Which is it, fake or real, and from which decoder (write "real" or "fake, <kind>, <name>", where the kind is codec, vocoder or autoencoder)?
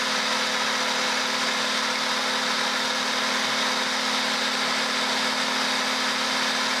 real